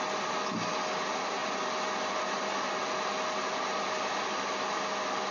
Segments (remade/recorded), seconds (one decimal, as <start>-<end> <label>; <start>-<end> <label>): 0.0-5.3 recorded